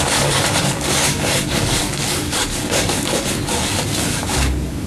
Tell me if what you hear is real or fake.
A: fake